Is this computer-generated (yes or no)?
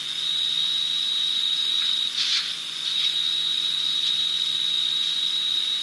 yes